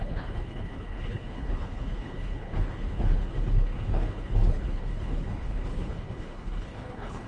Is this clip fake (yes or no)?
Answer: yes